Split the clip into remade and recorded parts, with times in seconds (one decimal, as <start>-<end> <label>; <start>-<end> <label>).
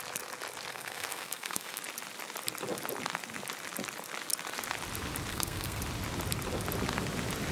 0.0-0.7 recorded; 0.7-1.8 remade; 1.8-5.3 recorded; 5.3-5.8 remade; 5.8-7.5 recorded